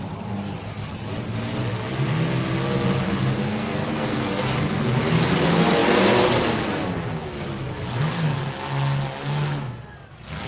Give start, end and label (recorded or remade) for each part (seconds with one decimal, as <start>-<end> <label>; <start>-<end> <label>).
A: 0.0-3.4 recorded; 3.4-4.4 remade; 4.4-10.5 recorded